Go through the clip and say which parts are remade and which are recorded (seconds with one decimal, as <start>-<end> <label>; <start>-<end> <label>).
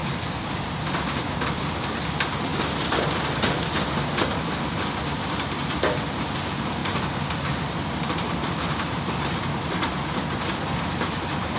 0.0-1.7 remade; 1.7-2.5 recorded; 2.5-3.2 remade; 3.2-11.6 recorded